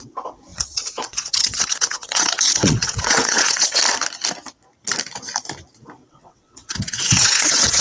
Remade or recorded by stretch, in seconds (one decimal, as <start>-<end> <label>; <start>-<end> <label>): 0.0-3.8 remade; 3.8-6.1 recorded; 6.1-7.8 remade